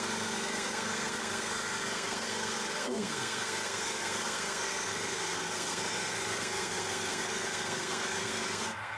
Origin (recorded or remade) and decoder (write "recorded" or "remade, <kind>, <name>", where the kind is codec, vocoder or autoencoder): remade, codec, SNAC